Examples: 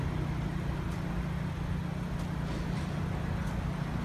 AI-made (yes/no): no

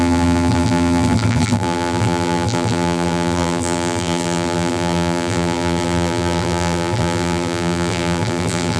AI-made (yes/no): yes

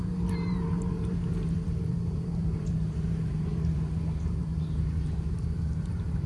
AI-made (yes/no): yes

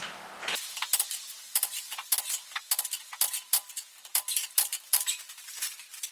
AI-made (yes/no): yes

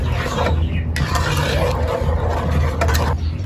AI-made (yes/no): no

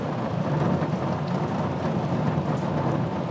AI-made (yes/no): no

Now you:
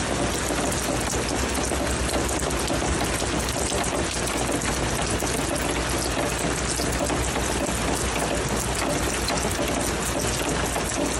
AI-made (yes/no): no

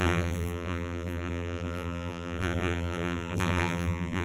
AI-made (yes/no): yes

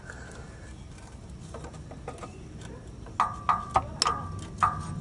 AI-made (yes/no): no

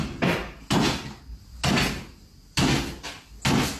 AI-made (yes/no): no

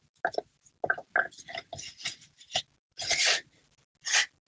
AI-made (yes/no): no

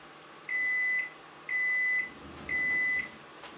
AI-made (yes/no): no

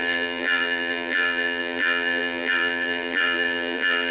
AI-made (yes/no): yes